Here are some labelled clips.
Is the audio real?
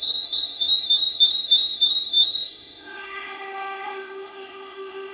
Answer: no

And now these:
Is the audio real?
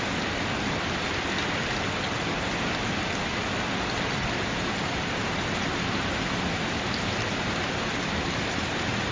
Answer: yes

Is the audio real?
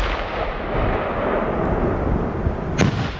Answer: yes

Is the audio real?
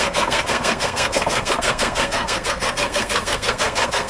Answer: no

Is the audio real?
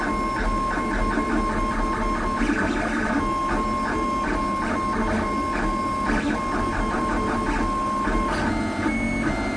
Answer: yes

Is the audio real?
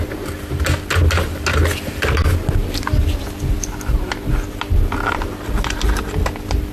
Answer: yes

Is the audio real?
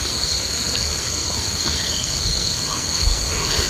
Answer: no